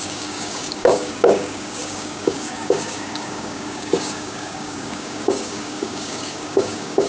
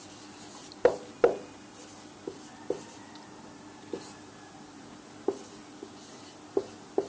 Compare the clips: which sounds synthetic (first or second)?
first